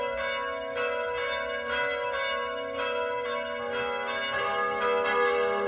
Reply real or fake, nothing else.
real